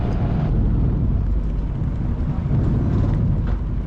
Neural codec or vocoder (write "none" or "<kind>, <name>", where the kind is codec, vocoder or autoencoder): none